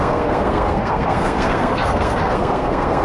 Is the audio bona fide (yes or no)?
no